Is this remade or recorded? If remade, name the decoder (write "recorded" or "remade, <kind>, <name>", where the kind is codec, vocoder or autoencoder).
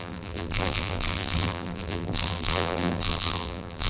remade, vocoder, BigVGAN v2